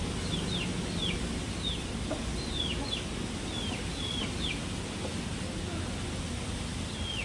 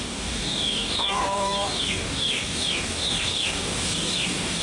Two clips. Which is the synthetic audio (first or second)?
second